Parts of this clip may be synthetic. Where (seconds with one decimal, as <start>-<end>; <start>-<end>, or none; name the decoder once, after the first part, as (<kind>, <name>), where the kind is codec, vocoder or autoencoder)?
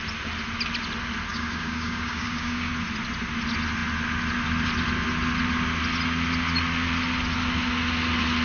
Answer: 1.3-2.7 (codec, DAC)